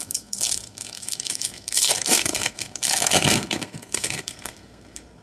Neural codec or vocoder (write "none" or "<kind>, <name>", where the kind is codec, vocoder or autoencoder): codec, SNAC